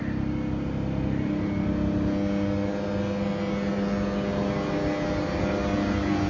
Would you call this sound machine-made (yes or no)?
no